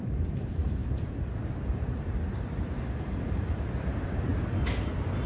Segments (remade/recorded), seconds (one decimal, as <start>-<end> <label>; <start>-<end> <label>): 0.0-4.3 remade; 4.3-5.3 recorded